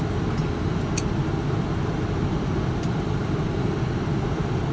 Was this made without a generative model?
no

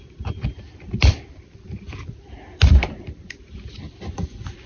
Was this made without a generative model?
no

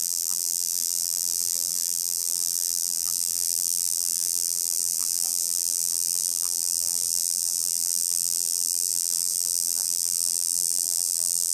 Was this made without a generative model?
no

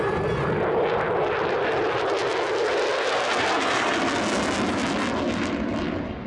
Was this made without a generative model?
yes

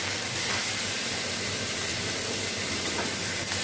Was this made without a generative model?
yes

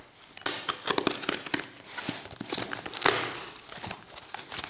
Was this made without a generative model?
yes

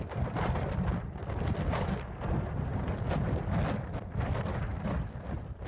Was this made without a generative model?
yes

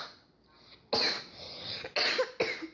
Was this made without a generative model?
yes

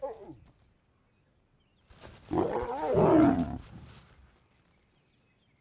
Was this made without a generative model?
yes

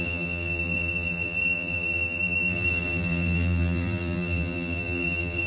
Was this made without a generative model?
no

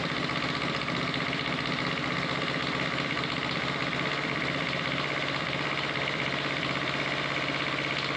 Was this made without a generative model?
yes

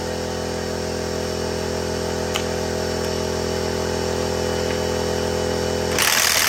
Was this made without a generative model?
yes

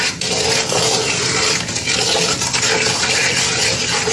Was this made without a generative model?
yes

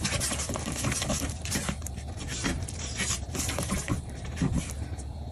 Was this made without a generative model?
no